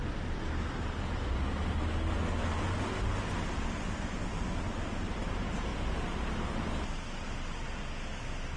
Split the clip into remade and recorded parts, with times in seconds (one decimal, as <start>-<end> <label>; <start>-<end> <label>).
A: 0.0-8.6 recorded